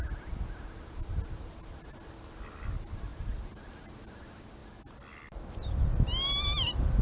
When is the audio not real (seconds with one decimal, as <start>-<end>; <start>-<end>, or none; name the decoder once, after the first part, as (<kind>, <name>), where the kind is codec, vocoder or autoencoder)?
none